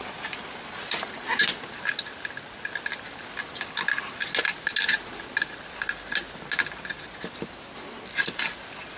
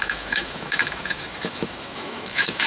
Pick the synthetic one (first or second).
second